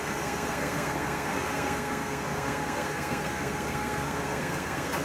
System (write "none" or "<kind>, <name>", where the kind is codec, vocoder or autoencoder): codec, SNAC